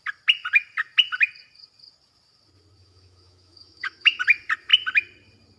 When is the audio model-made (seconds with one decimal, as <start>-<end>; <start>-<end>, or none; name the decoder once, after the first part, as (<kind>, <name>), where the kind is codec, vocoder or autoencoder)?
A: 2.8-4.2 (autoencoder, DAC-VAE)

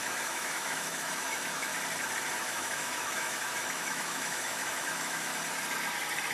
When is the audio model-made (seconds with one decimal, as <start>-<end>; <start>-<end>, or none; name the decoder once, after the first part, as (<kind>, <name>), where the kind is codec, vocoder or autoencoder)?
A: 0.0-1.7 (autoencoder, DAC-VAE); 2.4-5.3

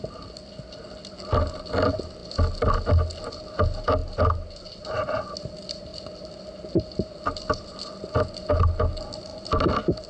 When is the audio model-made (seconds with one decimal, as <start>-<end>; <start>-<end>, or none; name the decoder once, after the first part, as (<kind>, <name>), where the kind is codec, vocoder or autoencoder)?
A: none

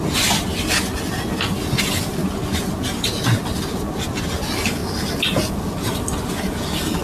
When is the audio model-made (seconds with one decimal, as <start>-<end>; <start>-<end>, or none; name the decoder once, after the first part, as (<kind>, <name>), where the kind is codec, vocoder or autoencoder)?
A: none

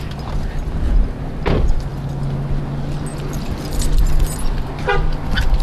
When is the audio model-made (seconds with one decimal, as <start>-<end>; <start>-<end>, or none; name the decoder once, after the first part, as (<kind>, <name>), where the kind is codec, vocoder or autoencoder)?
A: none